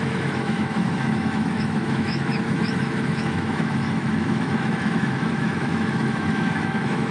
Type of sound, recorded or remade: remade